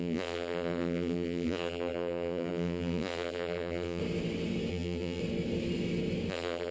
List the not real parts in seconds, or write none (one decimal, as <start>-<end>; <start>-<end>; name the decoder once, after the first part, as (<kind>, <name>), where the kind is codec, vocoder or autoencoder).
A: 0.0-4.0 (vocoder, BigVGAN v2); 4.7-5.2; 6.3-6.7